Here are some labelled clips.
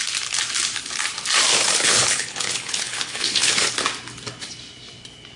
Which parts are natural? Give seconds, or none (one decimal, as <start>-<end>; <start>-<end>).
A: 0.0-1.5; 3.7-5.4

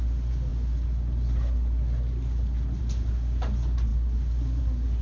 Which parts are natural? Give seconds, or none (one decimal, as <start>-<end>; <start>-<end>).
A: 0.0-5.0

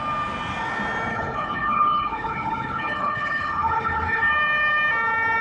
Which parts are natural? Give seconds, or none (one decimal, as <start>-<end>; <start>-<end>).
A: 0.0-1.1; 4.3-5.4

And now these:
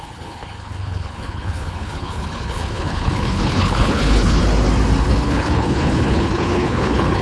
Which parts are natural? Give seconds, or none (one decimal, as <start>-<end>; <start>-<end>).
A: 4.4-5.0

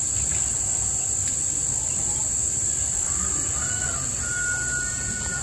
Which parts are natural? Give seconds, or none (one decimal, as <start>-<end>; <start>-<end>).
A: 0.0-5.4

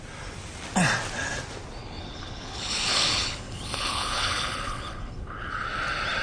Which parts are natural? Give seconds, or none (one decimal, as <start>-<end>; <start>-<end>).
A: 0.0-1.8; 5.5-6.2